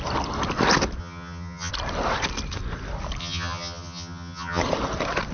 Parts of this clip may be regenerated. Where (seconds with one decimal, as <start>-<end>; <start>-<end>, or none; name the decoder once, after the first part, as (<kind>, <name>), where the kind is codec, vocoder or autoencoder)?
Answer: 1.0-1.7 (vocoder, HiFi-GAN); 3.2-4.6